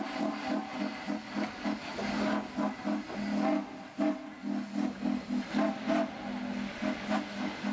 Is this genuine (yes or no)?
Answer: yes